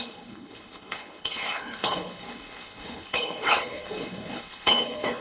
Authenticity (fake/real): fake